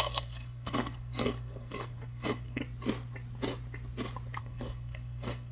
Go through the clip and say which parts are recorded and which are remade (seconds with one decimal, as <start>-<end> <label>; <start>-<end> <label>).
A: 0.0-2.6 remade; 2.6-4.4 recorded; 4.4-5.5 remade